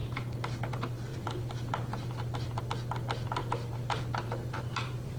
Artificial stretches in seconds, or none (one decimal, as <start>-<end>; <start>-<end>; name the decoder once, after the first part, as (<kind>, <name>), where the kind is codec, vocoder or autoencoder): 0.0-0.7 (vocoder, BigVGAN v2); 1.1-2.6; 3.4-5.2